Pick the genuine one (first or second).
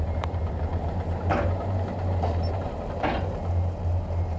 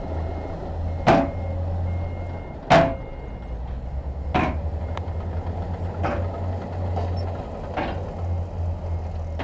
second